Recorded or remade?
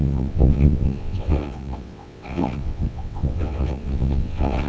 remade